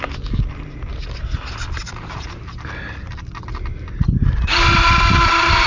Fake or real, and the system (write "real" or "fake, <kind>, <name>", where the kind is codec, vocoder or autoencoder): real